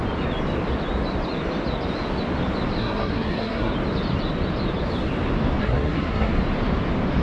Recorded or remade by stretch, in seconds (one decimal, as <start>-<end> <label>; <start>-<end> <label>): 0.0-2.8 recorded; 2.8-3.7 remade; 3.7-5.6 recorded; 5.6-6.3 remade; 6.3-7.2 recorded